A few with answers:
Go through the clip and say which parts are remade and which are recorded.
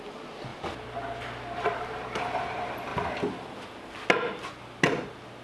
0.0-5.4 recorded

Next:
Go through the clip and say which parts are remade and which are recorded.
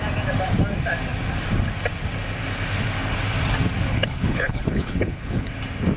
0.0-3.9 recorded; 3.9-5.5 remade; 5.5-6.0 recorded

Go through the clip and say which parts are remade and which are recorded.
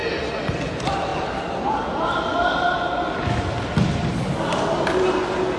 0.0-5.6 recorded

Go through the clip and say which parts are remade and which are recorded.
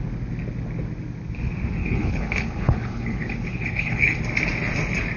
0.0-1.8 recorded; 1.8-4.2 remade; 4.2-5.2 recorded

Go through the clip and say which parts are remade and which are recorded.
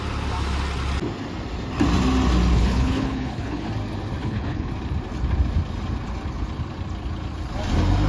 0.0-2.5 recorded; 2.5-3.7 remade; 3.7-4.2 recorded; 4.2-4.7 remade; 4.7-8.1 recorded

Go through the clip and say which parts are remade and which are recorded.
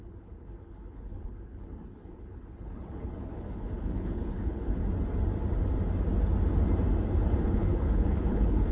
0.0-4.8 remade; 4.8-7.4 recorded; 7.4-8.7 remade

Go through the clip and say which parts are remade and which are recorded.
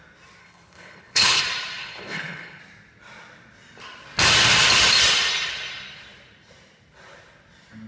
0.0-0.4 recorded; 0.4-1.4 remade; 1.4-1.8 recorded; 1.8-2.6 remade; 2.6-7.9 recorded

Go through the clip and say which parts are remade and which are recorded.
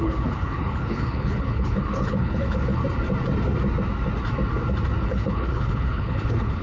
0.0-2.8 remade; 2.8-5.0 recorded; 5.0-6.6 remade